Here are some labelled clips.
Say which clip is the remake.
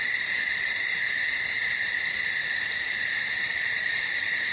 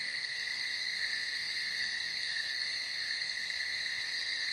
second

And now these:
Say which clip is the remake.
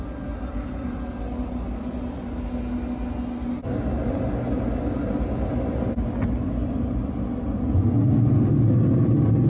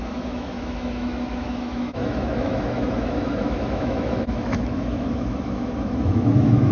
second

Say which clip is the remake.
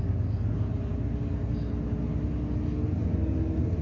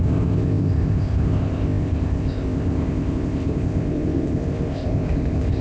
second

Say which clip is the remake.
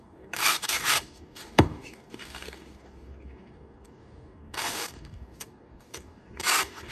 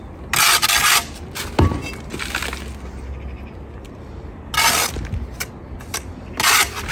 first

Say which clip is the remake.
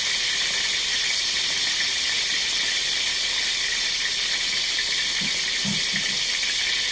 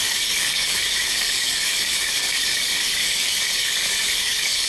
second